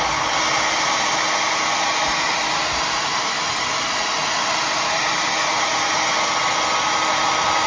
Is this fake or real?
real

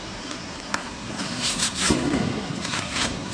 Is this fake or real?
fake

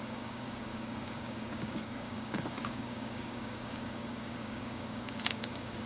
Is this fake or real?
fake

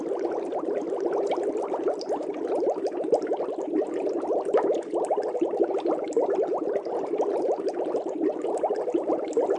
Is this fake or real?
real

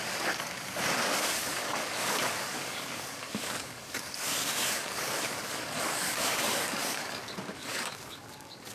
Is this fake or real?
fake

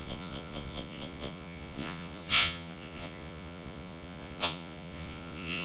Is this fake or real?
fake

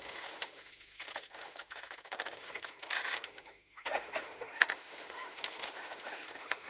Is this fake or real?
fake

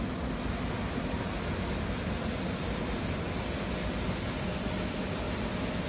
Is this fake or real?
real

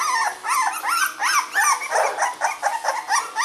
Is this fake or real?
real